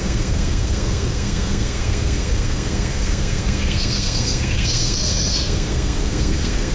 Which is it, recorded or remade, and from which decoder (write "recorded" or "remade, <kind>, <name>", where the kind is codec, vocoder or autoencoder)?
remade, codec, SNAC